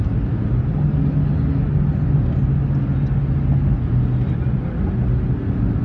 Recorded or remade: recorded